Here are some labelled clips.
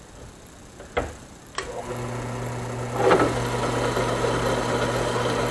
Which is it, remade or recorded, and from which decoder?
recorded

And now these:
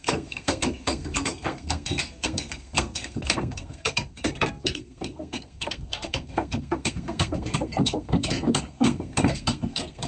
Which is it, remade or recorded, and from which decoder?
remade, codec, SNAC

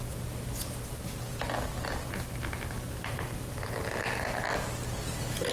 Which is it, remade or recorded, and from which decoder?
recorded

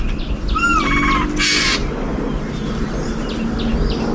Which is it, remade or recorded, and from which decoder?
recorded